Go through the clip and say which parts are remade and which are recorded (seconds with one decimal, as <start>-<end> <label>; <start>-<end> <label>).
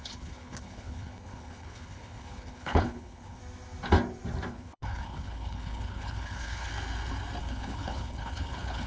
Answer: 0.0-3.4 remade; 3.4-4.5 recorded; 4.5-6.7 remade; 6.7-7.4 recorded; 7.4-8.9 remade